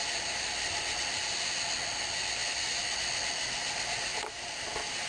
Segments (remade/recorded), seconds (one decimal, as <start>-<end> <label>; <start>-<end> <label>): 0.0-4.1 recorded; 4.1-5.1 remade